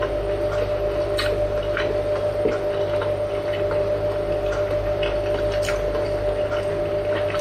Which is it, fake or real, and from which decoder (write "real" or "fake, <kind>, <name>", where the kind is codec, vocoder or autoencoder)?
real